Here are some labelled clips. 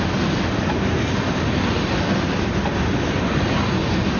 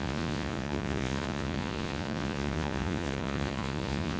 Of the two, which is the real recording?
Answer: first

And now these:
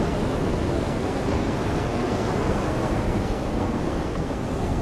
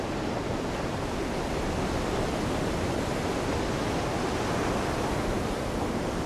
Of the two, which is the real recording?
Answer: second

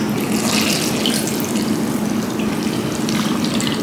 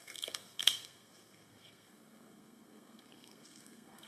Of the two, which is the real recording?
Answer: first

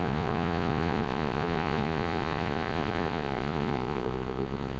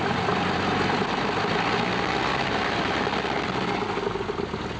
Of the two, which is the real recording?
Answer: second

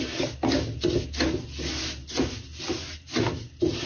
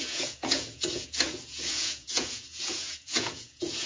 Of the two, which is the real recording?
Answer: first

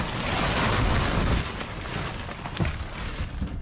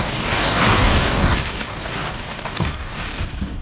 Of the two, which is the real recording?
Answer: first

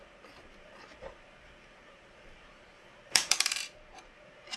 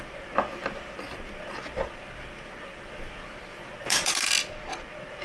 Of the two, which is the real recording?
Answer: second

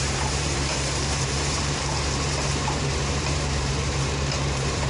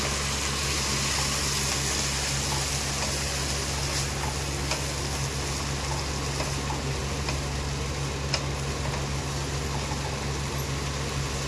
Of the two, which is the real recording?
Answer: second